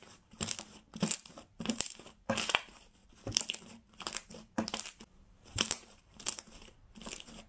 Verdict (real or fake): fake